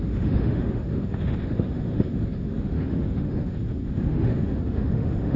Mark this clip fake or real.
fake